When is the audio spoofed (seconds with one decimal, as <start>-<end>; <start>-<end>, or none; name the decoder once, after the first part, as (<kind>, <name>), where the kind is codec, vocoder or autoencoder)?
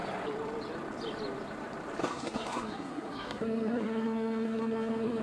2.0-5.2 (codec, SNAC)